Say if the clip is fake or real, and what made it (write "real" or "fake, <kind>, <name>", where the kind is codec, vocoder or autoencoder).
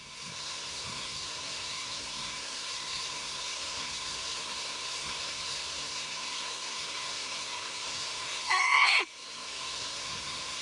fake, codec, SNAC